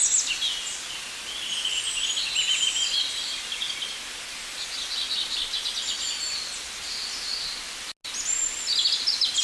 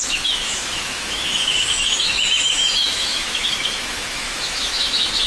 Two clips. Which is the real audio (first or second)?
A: first